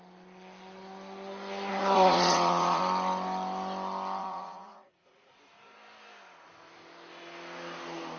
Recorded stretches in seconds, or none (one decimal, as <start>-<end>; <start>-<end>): 0.0-1.7; 2.8-4.2; 5.3-8.2